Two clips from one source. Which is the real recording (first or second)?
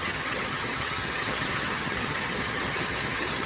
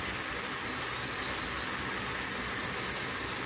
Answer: second